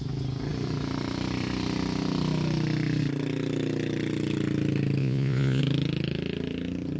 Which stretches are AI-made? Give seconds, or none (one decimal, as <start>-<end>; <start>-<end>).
5.0-5.6